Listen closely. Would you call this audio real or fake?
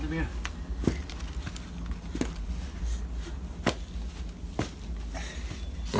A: real